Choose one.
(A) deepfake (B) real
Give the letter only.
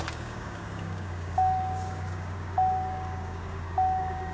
A